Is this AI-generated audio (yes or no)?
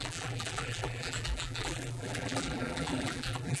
yes